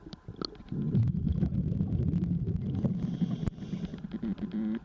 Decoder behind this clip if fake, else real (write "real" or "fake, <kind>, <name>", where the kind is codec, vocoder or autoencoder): real